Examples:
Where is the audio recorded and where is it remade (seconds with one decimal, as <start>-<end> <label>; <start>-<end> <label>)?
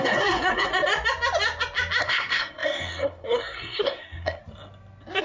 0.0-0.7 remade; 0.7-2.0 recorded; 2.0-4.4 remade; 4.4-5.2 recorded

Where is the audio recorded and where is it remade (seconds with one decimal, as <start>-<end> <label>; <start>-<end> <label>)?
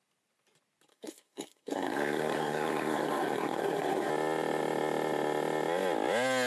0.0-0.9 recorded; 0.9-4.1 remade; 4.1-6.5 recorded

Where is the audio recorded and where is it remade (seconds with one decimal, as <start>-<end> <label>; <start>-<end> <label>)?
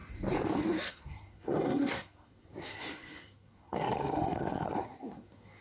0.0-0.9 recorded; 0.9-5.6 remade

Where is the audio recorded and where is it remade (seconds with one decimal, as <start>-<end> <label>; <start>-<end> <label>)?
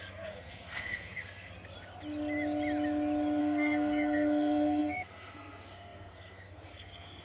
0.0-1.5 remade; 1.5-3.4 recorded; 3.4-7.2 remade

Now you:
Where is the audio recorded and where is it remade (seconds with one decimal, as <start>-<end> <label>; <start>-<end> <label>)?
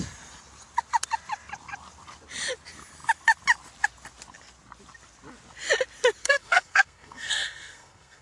0.0-6.2 recorded; 6.2-8.2 remade